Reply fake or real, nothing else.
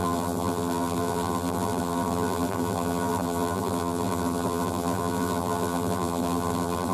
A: fake